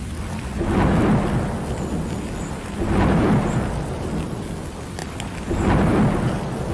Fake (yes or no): no